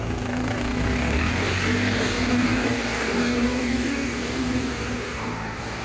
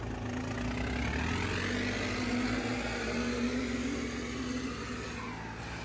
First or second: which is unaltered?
second